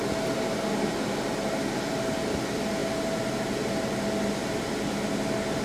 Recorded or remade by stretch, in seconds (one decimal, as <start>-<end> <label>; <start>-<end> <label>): 0.0-2.8 recorded; 2.8-3.9 remade; 3.9-5.6 recorded